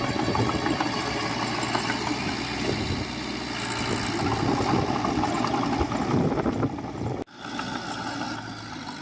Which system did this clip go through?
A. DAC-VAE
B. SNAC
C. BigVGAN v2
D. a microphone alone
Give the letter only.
D